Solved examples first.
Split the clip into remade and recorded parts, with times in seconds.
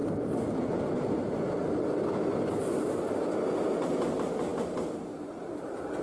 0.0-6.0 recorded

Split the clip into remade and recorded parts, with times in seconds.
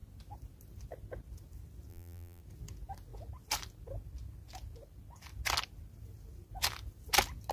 0.0-1.9 recorded; 1.9-2.4 remade; 2.4-7.5 recorded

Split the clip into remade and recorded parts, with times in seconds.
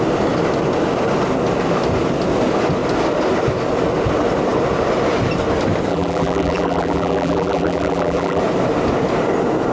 0.0-5.9 recorded; 5.9-8.4 remade; 8.4-9.7 recorded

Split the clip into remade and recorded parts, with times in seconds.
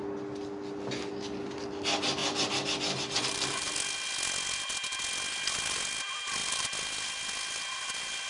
0.0-8.3 recorded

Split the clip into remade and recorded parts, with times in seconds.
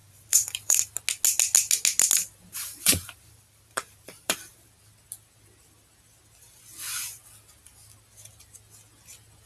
0.0-0.8 remade; 0.8-2.5 recorded; 2.5-4.7 remade; 4.7-9.5 recorded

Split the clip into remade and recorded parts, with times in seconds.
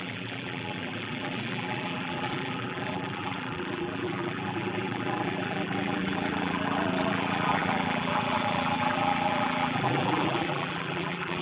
0.0-11.4 remade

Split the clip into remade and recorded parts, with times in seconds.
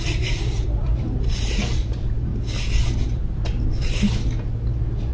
0.0-2.3 remade; 2.3-2.9 recorded; 2.9-4.1 remade; 4.1-5.1 recorded